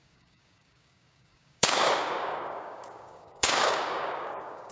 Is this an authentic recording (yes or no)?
no